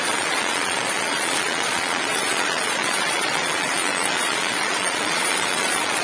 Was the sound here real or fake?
fake